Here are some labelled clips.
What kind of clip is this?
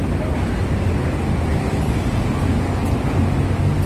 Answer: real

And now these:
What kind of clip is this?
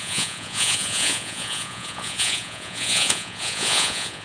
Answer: fake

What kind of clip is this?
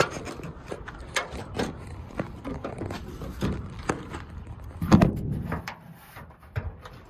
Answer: fake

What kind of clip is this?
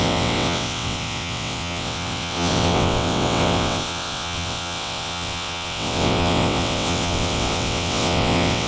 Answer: fake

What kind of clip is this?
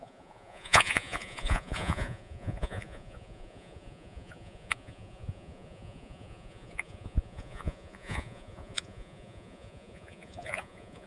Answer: fake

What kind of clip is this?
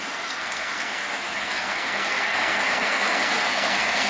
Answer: fake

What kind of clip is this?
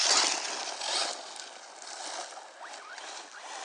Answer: real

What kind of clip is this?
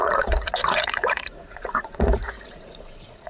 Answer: fake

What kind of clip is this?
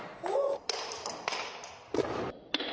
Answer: real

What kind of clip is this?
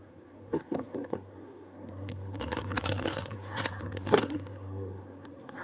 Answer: fake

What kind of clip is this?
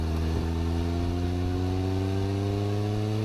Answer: real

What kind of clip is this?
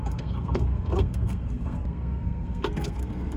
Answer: fake